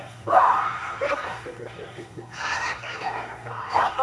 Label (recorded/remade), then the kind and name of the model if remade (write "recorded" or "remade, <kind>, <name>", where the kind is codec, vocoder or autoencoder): remade, codec, SNAC